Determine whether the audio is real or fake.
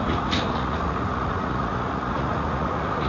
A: fake